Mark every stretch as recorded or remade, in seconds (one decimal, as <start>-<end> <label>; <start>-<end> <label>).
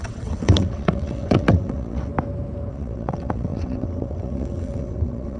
0.0-2.1 remade; 2.1-2.7 recorded; 2.7-5.4 remade